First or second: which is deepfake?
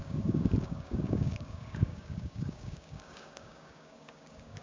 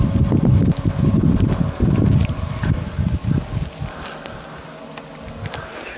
first